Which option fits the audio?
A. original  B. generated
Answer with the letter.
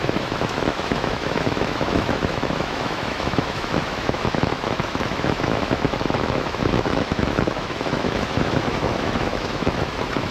B